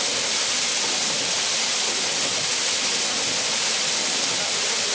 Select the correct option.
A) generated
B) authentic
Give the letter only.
B